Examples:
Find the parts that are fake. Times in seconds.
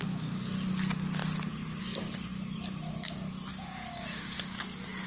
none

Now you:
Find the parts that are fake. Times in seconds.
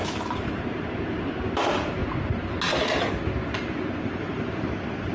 0.0-0.6 (autoencoder, DAC-VAE)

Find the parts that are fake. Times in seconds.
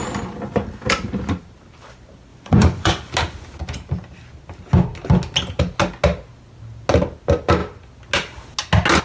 2.3-3.1 (vocoder, Vocos)